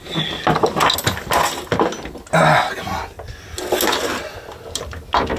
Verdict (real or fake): real